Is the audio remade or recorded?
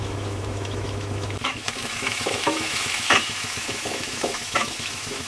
remade